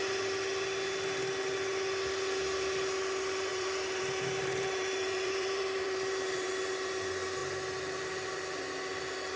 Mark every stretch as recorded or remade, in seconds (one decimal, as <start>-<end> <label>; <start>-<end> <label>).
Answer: 0.0-3.5 recorded; 3.5-6.5 remade; 6.5-9.4 recorded